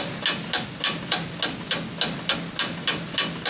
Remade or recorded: recorded